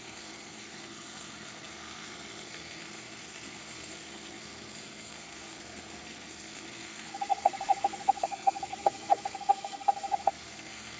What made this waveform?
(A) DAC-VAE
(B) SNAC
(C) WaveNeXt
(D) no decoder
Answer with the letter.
B